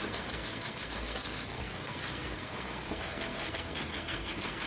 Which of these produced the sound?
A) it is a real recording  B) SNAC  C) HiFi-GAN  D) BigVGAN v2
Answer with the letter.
B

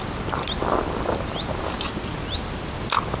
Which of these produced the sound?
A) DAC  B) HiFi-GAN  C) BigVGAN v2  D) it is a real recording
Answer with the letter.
D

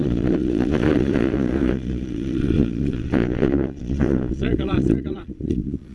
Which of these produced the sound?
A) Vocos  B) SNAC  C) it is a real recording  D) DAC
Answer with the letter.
A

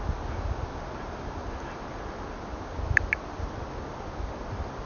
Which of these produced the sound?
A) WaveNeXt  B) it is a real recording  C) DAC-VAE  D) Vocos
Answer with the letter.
B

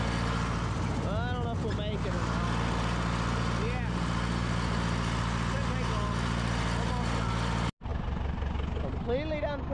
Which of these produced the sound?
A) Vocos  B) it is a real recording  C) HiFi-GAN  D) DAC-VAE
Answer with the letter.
B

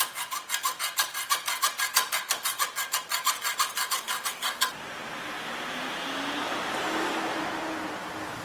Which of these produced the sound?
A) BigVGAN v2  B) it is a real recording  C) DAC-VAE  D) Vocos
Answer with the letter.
B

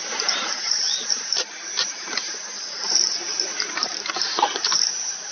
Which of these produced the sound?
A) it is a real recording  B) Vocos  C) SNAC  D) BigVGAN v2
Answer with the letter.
D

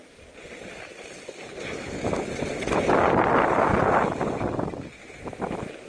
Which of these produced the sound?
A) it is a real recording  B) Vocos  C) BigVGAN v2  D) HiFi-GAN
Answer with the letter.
A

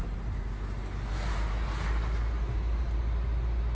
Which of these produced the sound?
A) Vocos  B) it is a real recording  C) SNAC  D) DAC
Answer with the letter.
B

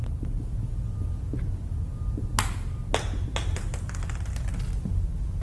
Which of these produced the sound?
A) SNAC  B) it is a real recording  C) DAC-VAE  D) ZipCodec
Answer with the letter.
B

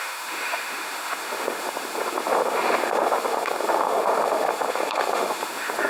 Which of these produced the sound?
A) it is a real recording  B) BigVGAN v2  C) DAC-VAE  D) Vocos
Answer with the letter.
C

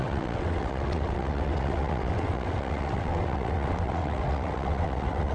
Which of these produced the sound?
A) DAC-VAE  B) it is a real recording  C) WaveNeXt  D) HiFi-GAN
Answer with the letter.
C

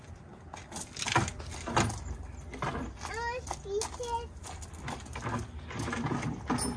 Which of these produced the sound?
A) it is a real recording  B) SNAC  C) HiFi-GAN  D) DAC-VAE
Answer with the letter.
A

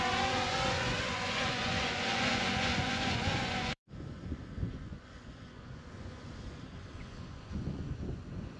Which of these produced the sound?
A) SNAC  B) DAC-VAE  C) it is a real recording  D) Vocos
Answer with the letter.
D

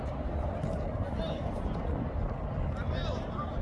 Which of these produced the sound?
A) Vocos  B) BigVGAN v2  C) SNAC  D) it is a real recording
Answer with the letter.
D